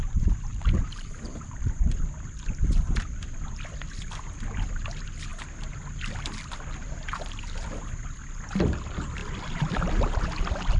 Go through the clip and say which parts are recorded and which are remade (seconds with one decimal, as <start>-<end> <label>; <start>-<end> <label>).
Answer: 0.0-0.5 recorded; 0.5-2.0 remade; 2.0-10.8 recorded